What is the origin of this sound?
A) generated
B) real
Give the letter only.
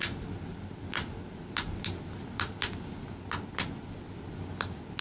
B